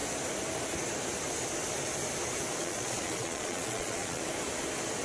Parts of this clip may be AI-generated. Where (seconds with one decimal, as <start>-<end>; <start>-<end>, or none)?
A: 2.6-4.2